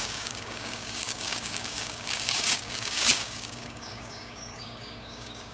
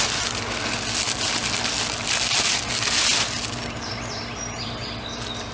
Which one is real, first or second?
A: second